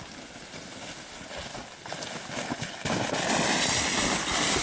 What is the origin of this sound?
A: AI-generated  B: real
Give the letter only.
B